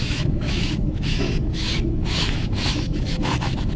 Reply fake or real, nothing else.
fake